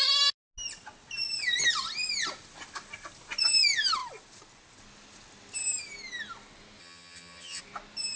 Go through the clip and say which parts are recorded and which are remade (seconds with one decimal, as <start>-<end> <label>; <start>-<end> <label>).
0.0-6.8 recorded; 6.8-7.6 remade; 7.6-8.2 recorded